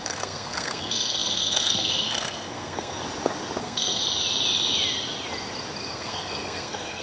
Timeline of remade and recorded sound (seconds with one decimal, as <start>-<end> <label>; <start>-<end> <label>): 0.0-3.0 remade; 3.0-3.6 recorded; 3.6-4.0 remade; 4.0-5.9 recorded; 5.9-7.0 remade